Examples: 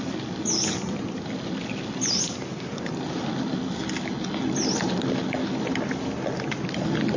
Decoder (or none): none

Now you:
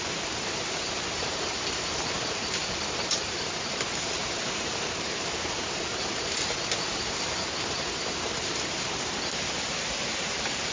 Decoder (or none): vocoder, BigVGAN v2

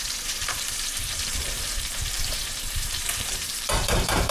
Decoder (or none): vocoder, BigVGAN v2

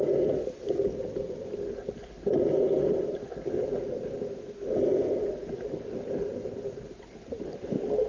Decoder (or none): none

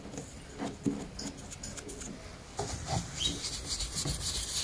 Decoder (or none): none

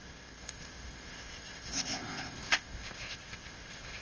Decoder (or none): codec, ZipCodec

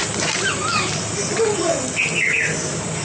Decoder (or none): none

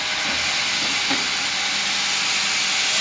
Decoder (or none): none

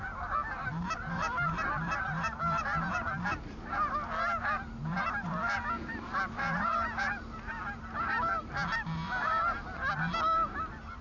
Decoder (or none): vocoder, BigVGAN v2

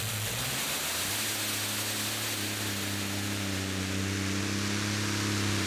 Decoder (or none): none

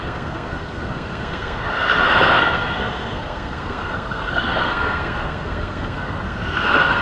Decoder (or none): codec, SNAC